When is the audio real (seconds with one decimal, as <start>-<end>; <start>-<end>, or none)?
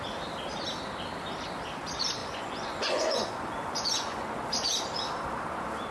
0.0-2.2; 4.4-5.9